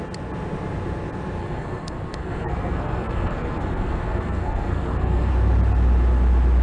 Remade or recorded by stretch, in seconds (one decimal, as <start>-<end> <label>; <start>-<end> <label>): 0.0-1.4 recorded; 1.4-5.3 remade; 5.3-6.6 recorded